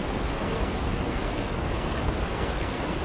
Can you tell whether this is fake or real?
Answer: fake